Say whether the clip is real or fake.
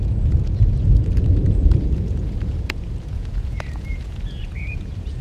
fake